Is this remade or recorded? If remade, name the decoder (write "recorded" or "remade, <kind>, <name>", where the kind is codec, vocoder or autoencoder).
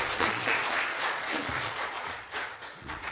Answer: remade, vocoder, Vocos